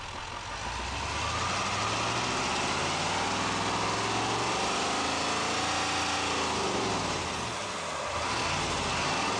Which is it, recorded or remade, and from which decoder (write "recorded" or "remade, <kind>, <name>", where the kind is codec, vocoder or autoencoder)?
recorded